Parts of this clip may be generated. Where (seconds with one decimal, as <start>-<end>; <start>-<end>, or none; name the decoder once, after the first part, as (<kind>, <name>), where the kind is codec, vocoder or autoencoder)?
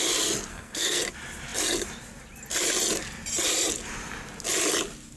0.5-1.1 (codec, SNAC)